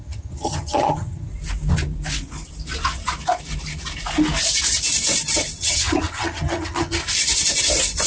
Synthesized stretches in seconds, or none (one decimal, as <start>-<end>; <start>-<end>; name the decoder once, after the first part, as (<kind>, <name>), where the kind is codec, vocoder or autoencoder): 0.0-1.3 (vocoder, HiFi-GAN); 5.6-7.0